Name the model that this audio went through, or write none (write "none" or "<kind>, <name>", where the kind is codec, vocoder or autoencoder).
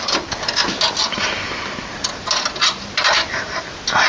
none